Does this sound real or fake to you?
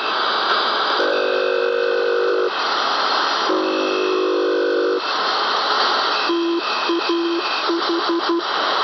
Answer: real